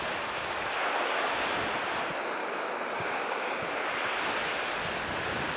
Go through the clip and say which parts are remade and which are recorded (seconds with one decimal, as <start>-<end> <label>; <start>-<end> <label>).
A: 0.0-2.4 recorded; 2.4-3.7 remade; 3.7-5.6 recorded